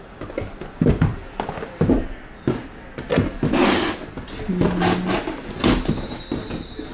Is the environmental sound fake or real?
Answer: real